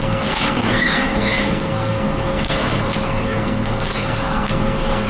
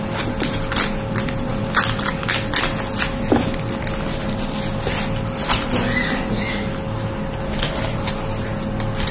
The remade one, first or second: first